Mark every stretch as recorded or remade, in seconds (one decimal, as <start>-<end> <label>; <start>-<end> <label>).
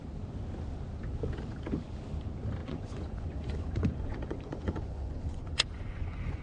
0.0-2.6 recorded; 2.6-6.4 remade